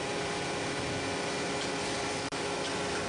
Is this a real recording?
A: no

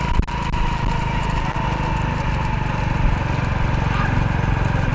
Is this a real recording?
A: yes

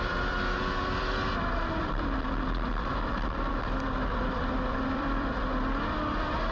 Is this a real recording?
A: no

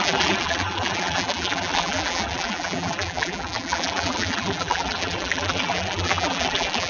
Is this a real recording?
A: no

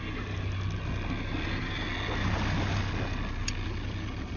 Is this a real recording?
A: yes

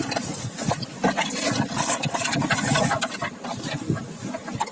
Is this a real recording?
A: yes